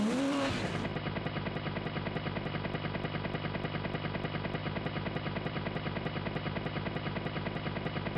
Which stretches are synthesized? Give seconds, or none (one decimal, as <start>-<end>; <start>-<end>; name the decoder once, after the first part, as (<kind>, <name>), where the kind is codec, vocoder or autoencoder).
0.9-2.5 (vocoder, BigVGAN v2); 4.6-8.2